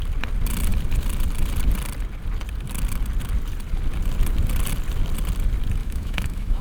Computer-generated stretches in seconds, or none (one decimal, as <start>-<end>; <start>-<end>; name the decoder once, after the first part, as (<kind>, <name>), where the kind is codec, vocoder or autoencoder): 5.8-6.6 (autoencoder, DAC-VAE)